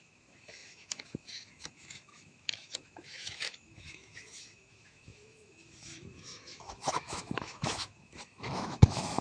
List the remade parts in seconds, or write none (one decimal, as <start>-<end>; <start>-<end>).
0.0-9.2